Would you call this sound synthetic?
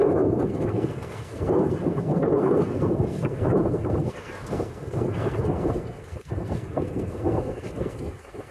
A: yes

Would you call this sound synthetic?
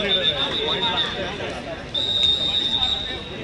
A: no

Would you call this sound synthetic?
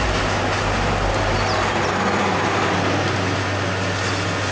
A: no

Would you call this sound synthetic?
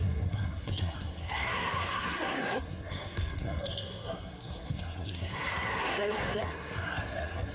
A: yes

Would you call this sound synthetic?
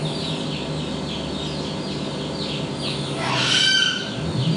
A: no